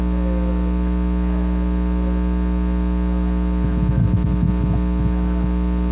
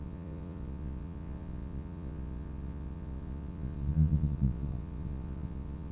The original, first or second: first